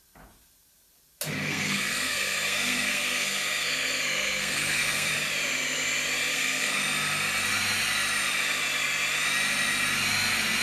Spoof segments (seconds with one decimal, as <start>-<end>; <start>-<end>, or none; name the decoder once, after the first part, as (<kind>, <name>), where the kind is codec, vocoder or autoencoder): 1.4-5.1 (codec, SNAC); 6.3-6.8